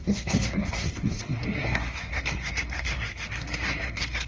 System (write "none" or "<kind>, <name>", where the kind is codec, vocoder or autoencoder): codec, SNAC